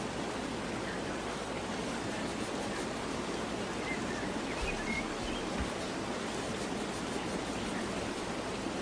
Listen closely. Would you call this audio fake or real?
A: real